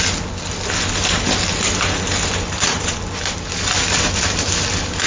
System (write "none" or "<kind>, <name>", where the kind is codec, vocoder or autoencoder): none